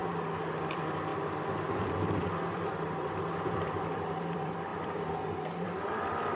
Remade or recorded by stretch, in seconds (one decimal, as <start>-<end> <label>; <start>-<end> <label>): 0.0-0.6 recorded; 0.6-1.1 remade; 1.1-3.0 recorded; 3.0-4.7 remade; 4.7-5.4 recorded; 5.4-6.4 remade